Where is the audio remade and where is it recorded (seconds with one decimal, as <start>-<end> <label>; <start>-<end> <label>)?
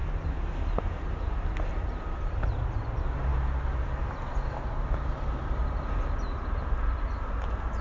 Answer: 0.0-7.8 recorded